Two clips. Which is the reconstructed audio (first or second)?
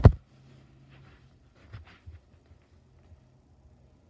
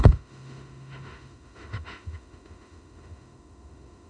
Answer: second